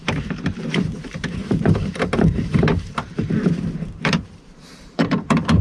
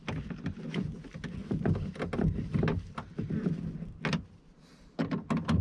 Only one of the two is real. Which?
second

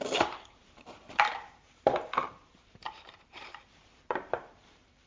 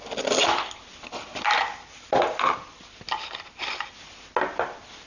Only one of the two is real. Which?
second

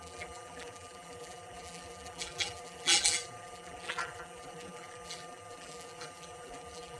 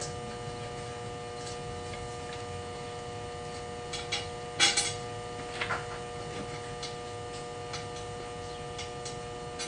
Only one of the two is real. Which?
second